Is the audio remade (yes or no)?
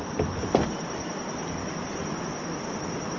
no